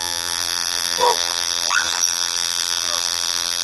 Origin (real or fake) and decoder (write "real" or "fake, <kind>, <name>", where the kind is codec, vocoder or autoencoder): fake, vocoder, BigVGAN v2